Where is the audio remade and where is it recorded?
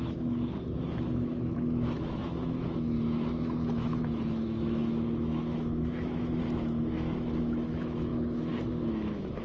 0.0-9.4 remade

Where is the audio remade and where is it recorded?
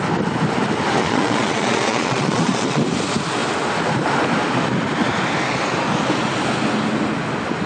0.0-1.0 recorded; 1.0-2.8 remade; 2.8-7.7 recorded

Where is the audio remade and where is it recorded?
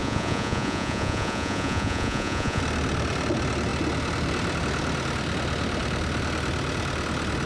0.0-2.6 remade; 2.6-7.5 recorded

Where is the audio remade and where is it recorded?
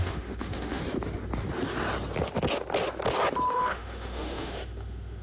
0.0-0.8 remade; 0.8-3.5 recorded; 3.5-5.2 remade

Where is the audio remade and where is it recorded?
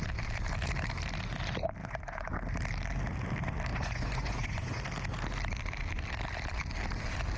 0.0-1.8 recorded; 1.8-2.3 remade; 2.3-3.7 recorded; 3.7-4.8 remade; 4.8-7.4 recorded